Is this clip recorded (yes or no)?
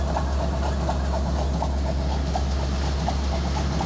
yes